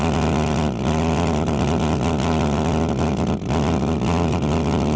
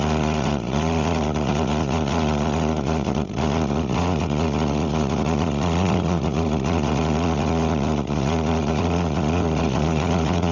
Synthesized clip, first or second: second